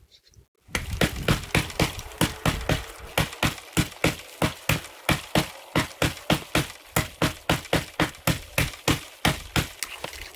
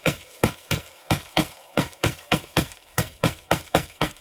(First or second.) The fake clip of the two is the second